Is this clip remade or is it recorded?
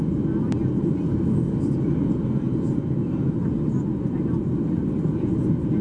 recorded